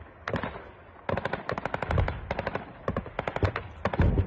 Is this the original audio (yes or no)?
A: yes